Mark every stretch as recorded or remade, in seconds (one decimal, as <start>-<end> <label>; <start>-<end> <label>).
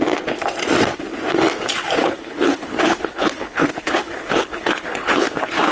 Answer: 0.0-2.0 recorded; 2.0-5.7 remade